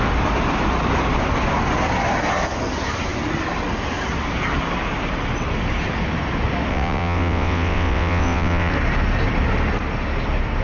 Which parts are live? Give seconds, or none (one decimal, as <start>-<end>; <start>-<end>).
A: 0.0-6.7; 8.7-10.6